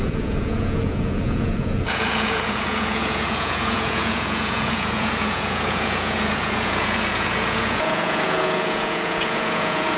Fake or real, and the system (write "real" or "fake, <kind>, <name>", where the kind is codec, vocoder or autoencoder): fake, vocoder, Vocos